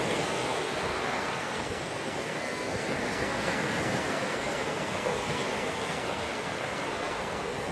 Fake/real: fake